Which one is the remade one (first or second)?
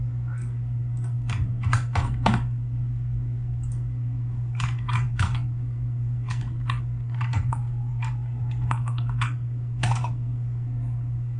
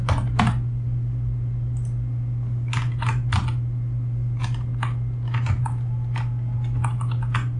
first